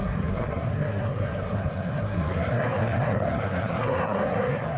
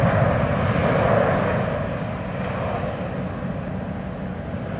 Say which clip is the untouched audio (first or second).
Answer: second